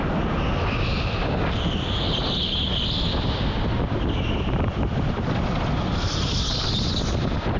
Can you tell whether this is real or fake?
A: real